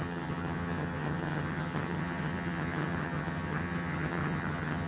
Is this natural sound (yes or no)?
no